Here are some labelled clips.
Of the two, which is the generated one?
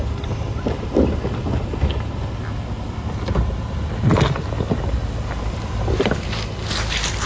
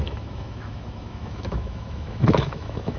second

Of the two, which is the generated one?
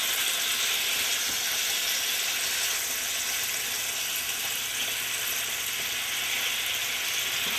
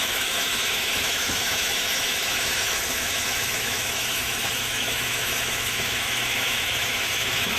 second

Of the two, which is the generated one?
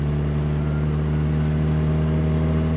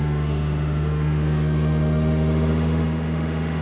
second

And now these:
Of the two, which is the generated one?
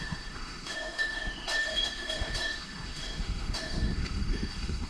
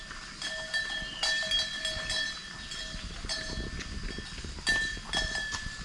first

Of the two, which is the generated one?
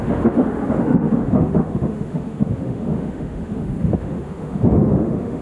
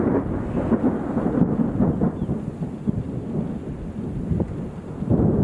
first